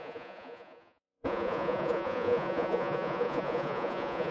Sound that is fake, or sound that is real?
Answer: fake